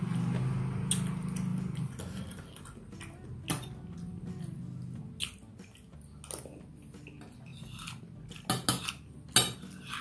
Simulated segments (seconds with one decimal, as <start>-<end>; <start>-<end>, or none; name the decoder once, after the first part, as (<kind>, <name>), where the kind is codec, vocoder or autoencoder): none